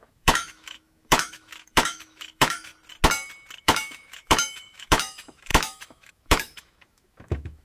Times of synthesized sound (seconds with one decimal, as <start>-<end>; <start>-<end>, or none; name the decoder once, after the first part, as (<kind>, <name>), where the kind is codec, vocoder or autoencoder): 0.0-2.7 (autoencoder, DAC-VAE); 3.6-7.6